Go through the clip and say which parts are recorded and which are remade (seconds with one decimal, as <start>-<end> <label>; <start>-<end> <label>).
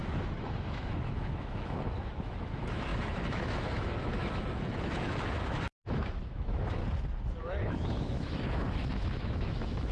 0.0-6.8 remade; 6.8-7.4 recorded; 7.4-9.9 remade